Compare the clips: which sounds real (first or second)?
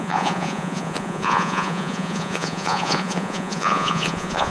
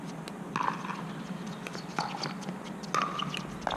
second